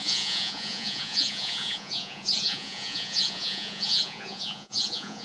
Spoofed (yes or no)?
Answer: yes